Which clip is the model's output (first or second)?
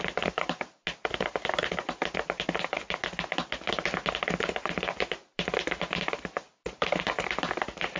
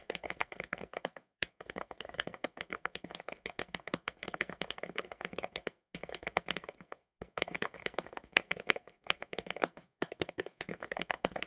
second